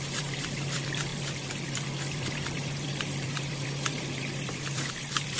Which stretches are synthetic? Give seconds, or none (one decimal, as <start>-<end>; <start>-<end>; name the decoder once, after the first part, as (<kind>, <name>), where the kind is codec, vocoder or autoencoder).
0.0-5.4 (vocoder, BigVGAN v2)